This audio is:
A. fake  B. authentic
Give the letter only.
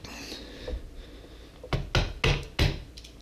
B